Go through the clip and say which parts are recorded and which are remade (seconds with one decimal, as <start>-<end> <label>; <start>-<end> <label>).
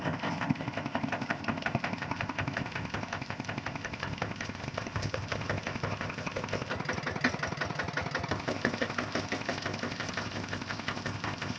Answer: 0.0-6.7 remade; 6.7-8.3 recorded; 8.3-11.6 remade